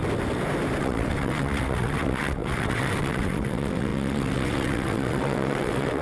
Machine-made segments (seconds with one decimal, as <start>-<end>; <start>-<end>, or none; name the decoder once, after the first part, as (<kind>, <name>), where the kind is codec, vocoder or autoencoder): 0.8-6.0 (vocoder, WaveNeXt)